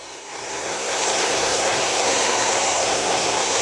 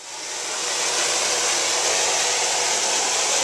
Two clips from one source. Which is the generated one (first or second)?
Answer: first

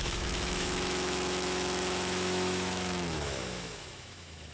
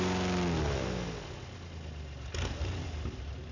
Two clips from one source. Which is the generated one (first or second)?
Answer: first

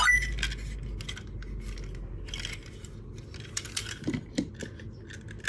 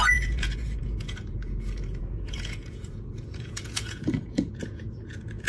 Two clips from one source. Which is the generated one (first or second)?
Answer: second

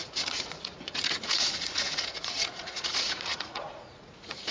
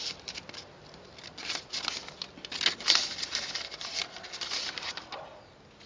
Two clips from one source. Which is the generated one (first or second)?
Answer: first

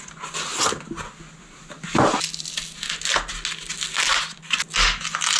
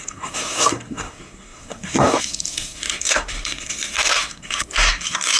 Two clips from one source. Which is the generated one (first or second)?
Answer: second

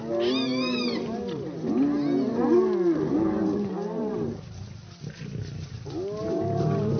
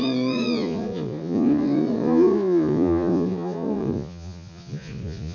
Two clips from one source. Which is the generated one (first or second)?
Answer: second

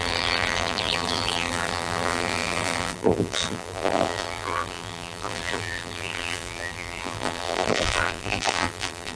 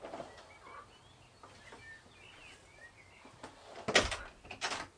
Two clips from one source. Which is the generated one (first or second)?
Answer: first